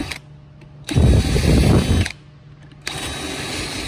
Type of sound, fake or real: real